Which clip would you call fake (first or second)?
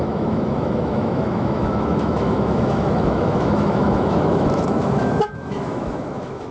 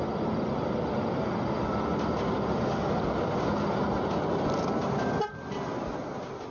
first